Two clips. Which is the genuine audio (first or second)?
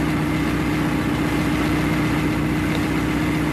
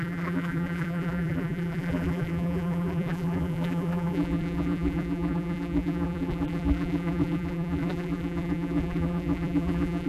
first